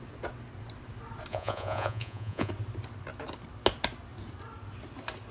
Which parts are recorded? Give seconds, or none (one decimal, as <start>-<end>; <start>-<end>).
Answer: 0.0-1.3; 2.5-5.3